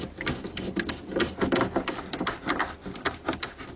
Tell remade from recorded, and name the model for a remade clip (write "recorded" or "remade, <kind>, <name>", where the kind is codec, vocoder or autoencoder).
recorded